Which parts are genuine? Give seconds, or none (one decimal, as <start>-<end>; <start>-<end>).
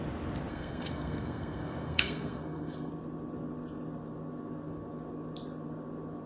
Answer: 0.0-0.5; 2.9-6.3